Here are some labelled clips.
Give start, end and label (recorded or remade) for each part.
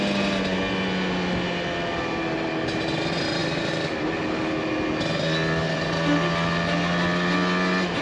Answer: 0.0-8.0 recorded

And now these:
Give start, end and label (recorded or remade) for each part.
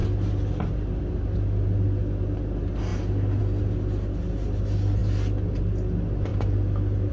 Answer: 0.0-7.1 recorded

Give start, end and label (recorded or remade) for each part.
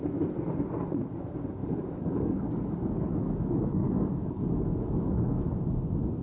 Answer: 0.0-1.6 recorded; 1.6-5.1 remade; 5.1-6.2 recorded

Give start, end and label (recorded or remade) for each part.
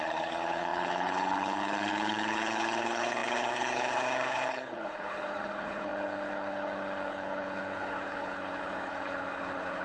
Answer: 0.0-9.8 remade